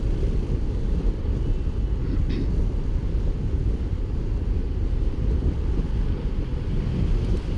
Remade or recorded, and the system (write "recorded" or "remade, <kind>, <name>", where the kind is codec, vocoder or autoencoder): recorded